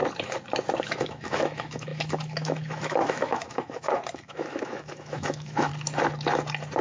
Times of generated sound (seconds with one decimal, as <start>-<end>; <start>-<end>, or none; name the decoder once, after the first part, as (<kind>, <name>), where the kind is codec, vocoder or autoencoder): 0.8-5.7 (autoencoder, DAC-VAE)